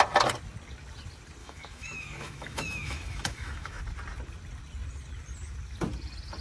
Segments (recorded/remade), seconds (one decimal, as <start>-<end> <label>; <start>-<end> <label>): 0.0-1.4 recorded; 1.4-3.8 remade; 3.8-6.4 recorded